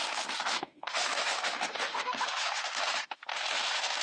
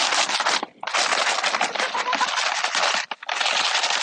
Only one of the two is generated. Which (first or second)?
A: first